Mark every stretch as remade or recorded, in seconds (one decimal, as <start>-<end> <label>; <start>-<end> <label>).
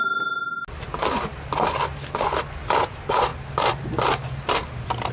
0.0-5.1 recorded